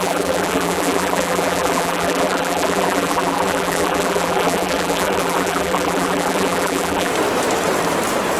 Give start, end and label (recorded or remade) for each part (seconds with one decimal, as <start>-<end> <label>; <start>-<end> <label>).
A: 0.0-7.1 remade; 7.1-8.4 recorded